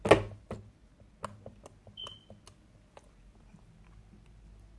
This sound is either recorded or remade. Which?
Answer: recorded